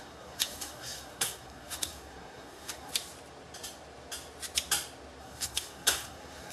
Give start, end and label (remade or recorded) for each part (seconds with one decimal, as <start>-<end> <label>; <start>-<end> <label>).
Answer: 0.0-2.9 remade; 2.9-5.2 recorded; 5.2-6.5 remade